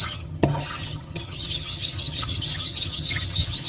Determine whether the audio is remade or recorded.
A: remade